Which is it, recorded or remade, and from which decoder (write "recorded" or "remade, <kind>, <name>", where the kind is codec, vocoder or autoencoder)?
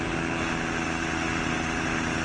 recorded